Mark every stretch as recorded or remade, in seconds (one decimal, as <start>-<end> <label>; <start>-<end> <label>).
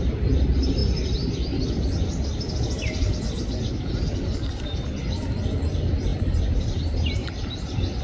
0.0-8.0 recorded